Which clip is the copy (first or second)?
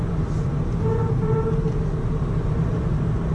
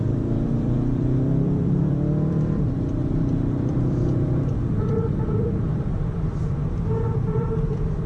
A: second